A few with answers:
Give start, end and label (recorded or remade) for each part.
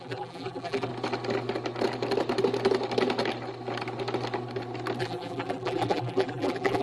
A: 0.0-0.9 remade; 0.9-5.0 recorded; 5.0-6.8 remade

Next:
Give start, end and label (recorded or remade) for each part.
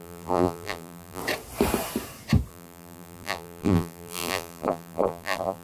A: 0.0-1.2 remade; 1.2-2.5 recorded; 2.5-5.6 remade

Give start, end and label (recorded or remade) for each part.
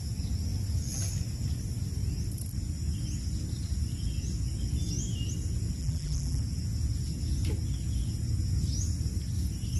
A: 0.0-5.8 recorded; 5.8-6.4 remade; 6.4-9.8 recorded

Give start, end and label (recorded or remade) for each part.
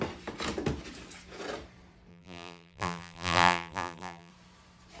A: 0.0-2.1 recorded; 2.1-4.3 remade; 4.3-5.0 recorded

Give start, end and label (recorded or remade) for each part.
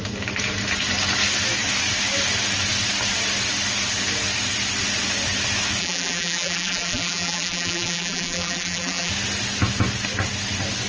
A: 0.0-5.8 recorded; 5.8-9.1 remade; 9.1-10.9 recorded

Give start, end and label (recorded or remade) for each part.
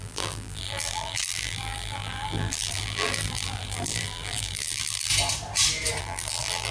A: 0.0-5.1 remade; 5.1-6.0 recorded; 6.0-6.7 remade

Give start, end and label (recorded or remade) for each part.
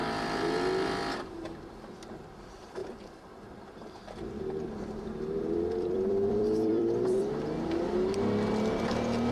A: 0.0-2.8 recorded; 2.8-7.3 remade; 7.3-9.3 recorded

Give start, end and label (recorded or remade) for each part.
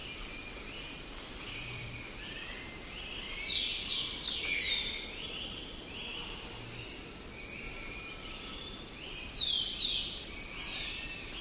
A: 0.0-2.5 remade; 2.5-3.7 recorded; 3.7-5.8 remade; 5.8-11.4 recorded